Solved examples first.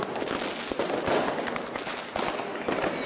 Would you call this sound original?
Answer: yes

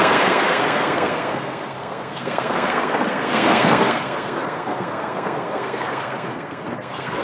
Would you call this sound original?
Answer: no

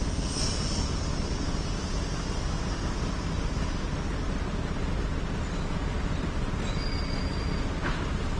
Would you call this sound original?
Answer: yes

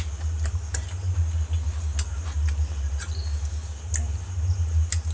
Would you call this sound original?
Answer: yes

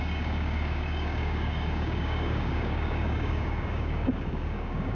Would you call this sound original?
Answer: no